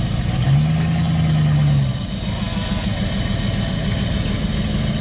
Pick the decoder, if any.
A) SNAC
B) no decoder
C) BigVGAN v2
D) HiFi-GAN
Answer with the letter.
B